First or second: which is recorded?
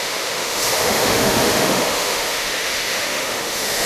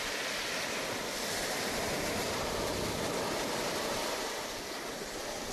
second